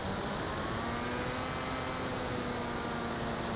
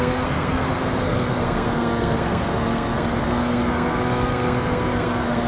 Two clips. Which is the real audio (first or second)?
first